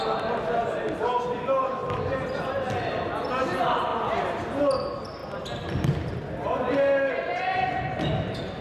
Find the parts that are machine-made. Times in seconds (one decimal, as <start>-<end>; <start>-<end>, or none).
none